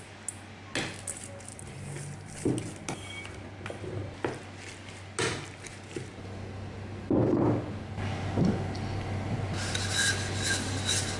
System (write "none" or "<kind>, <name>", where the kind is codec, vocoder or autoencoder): none